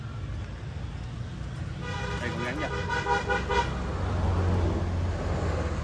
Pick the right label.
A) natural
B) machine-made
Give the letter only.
A